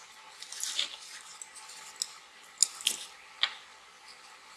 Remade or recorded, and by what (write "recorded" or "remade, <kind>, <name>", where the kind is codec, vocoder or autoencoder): recorded